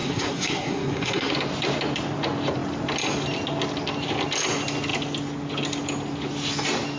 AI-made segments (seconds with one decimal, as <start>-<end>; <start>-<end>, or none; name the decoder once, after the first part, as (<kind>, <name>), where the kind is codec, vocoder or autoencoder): 0.0-1.3 (codec, SNAC)